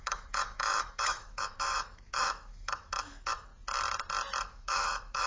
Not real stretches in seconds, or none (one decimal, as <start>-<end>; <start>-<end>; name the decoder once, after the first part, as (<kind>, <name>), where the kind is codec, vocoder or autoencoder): 0.0-3.5 (autoencoder, DAC-VAE); 4.4-5.3